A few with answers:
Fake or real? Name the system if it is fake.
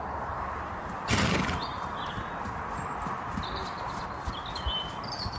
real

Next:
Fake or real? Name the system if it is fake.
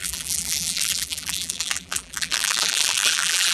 fake, vocoder, BigVGAN v2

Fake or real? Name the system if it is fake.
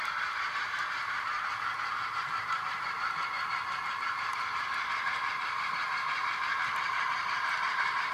fake, vocoder, BigVGAN v2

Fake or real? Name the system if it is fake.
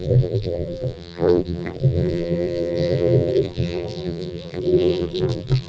fake, vocoder, BigVGAN v2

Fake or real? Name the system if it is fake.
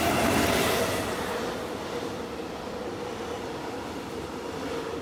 real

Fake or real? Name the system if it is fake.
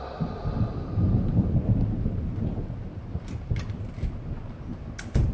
real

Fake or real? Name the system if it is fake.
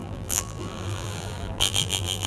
fake, vocoder, BigVGAN v2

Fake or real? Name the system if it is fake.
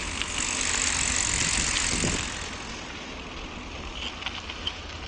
real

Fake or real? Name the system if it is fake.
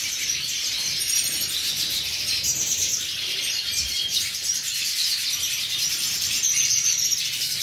fake, vocoder, BigVGAN v2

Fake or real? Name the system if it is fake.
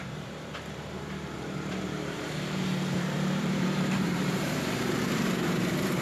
fake, vocoder, BigVGAN v2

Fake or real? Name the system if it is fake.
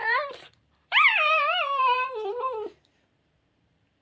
fake, vocoder, BigVGAN v2